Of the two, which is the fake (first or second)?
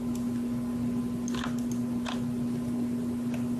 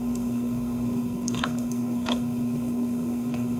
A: second